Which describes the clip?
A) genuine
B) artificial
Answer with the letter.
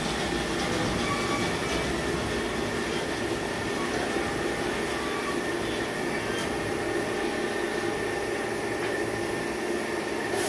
A